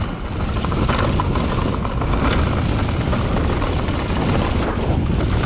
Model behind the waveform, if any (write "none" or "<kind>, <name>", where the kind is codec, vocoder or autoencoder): none